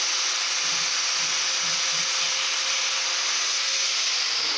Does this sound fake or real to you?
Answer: real